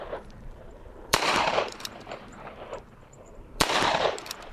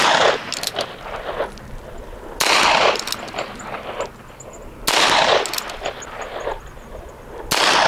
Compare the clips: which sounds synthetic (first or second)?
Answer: first